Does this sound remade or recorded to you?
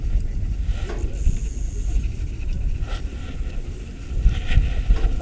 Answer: recorded